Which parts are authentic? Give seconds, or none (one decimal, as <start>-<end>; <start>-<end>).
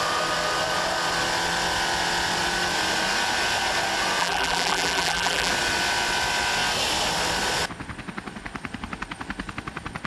0.0-4.2; 5.5-10.1